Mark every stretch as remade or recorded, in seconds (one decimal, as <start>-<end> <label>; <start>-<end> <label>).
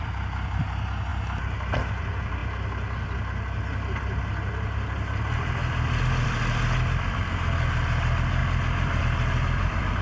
0.0-1.1 remade; 1.1-2.0 recorded; 2.0-2.4 remade; 2.4-6.0 recorded; 6.0-10.0 remade